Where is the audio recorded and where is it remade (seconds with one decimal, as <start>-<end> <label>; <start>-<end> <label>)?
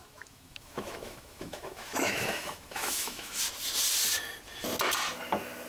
0.0-3.4 remade; 3.4-5.7 recorded